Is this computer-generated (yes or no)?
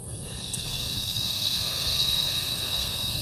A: yes